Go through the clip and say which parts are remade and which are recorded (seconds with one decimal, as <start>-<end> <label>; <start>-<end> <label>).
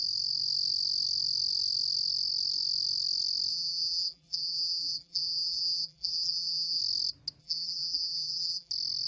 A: 0.0-3.5 recorded; 3.5-6.8 remade; 6.8-7.4 recorded; 7.4-8.7 remade; 8.7-9.1 recorded